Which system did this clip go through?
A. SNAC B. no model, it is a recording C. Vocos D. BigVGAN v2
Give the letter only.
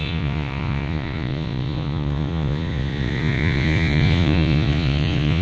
C